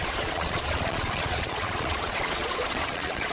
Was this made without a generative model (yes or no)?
no